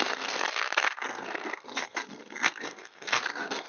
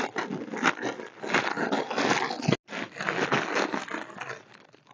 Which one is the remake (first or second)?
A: first